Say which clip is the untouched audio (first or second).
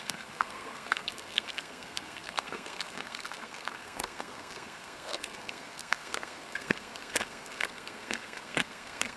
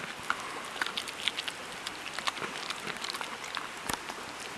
second